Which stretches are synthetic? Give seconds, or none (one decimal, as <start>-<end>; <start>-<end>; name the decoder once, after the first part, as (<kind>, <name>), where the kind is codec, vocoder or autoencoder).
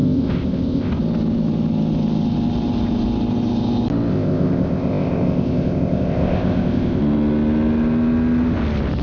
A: 0.0-1.0 (codec, ZipCodec); 4.1-7.0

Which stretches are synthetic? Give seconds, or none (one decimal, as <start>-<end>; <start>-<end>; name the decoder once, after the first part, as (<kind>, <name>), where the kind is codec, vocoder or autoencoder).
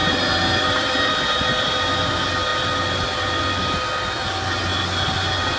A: none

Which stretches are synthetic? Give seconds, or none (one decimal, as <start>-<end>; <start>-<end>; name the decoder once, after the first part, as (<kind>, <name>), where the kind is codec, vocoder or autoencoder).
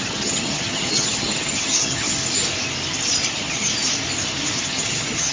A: 0.0-2.2 (vocoder, HiFi-GAN); 3.3-3.7; 4.6-5.3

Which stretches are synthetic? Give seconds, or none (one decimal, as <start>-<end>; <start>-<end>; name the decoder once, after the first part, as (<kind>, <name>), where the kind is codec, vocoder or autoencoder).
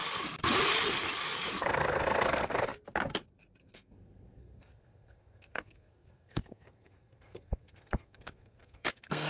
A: 1.6-2.7 (codec, SNAC); 3.6-9.3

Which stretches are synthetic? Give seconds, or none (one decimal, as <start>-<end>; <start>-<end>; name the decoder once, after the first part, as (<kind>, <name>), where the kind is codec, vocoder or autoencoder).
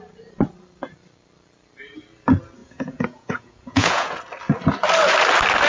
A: 2.6-4.2 (vocoder, Vocos)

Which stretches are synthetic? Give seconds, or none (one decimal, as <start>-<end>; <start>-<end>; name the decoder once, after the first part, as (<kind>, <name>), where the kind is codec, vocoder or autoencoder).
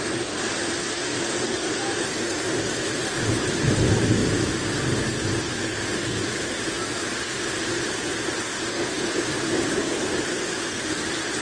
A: none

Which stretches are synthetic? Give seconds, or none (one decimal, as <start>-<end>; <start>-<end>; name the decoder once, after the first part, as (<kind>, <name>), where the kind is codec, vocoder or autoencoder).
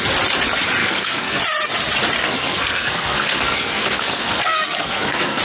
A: 0.8-1.4 (codec, SNAC); 2.2-5.4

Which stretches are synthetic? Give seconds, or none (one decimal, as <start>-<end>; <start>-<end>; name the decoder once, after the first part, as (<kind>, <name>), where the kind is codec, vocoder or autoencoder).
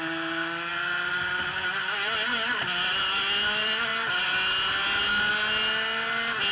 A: none